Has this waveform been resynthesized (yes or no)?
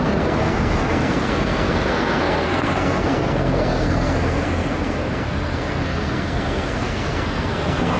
yes